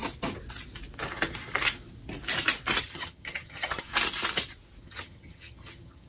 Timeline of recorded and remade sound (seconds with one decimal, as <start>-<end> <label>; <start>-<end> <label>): 0.0-2.8 recorded; 2.8-3.9 remade; 3.9-4.8 recorded; 4.8-6.1 remade